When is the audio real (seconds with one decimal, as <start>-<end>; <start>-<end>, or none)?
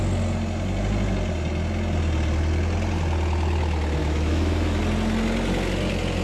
0.0-4.0; 4.8-6.2